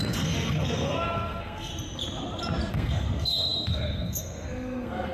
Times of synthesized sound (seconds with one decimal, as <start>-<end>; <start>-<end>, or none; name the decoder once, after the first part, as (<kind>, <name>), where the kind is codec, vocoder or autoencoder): 0.0-1.7 (codec, SNAC); 2.7-5.1